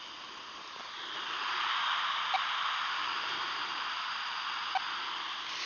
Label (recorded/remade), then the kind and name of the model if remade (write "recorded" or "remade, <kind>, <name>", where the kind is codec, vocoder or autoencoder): recorded